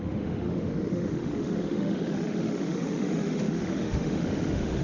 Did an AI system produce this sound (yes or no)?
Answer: yes